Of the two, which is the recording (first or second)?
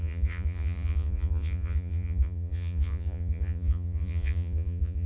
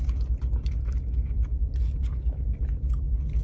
second